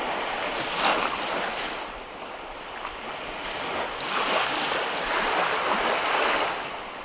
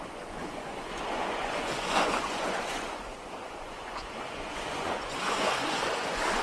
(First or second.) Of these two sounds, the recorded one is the first